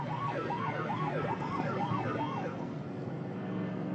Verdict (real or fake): fake